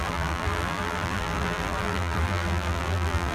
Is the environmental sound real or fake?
fake